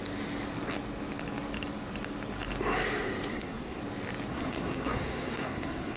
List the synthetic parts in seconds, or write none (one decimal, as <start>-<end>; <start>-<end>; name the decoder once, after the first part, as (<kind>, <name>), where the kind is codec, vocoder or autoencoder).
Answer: 3.3-3.8 (codec, SNAC); 4.3-6.0